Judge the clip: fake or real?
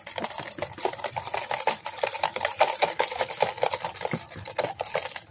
real